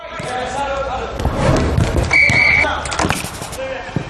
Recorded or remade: recorded